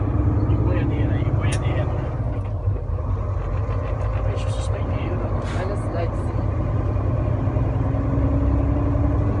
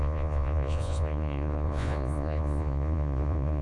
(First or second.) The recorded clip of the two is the first